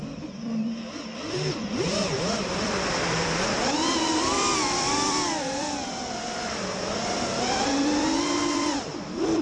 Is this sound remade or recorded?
remade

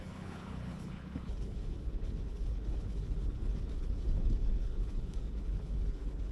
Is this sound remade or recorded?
remade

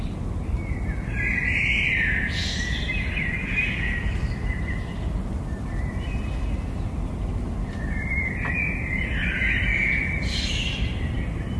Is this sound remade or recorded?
recorded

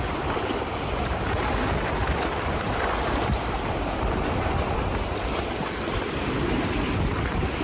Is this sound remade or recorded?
recorded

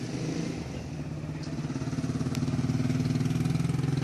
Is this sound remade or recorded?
recorded